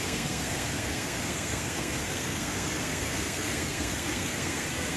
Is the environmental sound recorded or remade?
remade